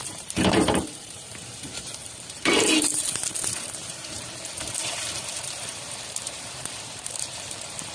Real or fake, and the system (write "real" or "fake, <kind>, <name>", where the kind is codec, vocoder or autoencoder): fake, vocoder, BigVGAN v2